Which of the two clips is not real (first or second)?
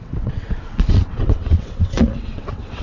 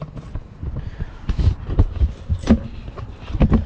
first